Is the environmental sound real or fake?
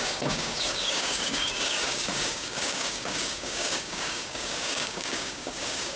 fake